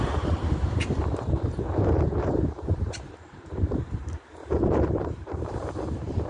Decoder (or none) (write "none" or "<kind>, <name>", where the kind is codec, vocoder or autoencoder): vocoder, BigVGAN v2